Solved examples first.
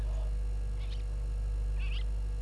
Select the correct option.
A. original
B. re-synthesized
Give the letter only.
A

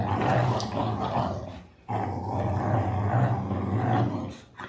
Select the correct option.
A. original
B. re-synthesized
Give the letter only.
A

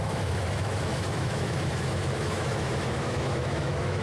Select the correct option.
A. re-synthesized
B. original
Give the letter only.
A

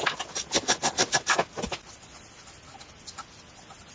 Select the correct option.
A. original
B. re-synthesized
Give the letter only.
A